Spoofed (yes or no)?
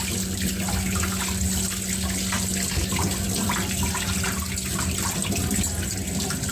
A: no